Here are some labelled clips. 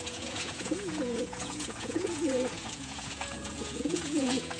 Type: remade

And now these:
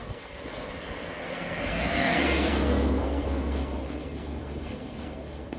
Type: remade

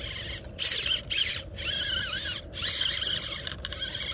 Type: recorded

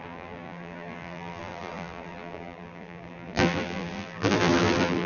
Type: remade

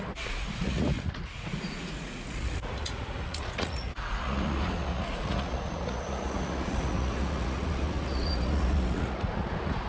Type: remade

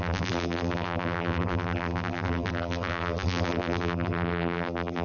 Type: remade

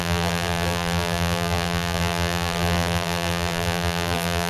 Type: remade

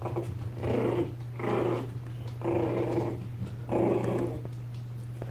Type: recorded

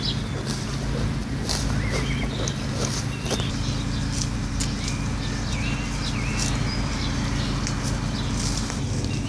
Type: recorded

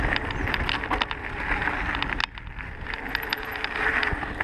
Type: recorded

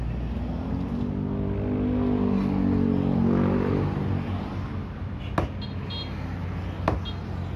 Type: recorded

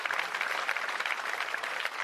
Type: remade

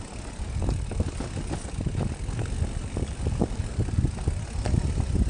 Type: recorded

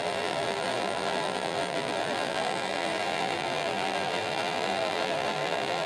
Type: remade